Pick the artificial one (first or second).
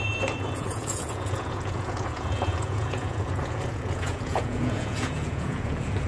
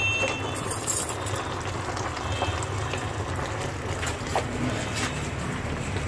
first